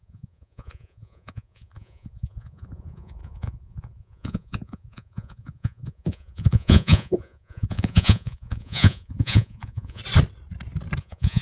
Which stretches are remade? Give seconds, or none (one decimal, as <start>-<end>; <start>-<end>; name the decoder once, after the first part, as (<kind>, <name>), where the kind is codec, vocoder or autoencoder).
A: 0.0-10.0 (vocoder, Vocos); 11.0-11.4